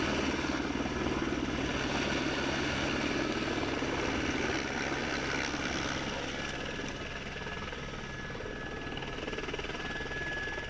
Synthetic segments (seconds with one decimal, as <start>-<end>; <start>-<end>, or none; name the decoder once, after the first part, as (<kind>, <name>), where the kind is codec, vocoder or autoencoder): none